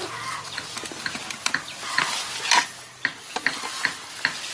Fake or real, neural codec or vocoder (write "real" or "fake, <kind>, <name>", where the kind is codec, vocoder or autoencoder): real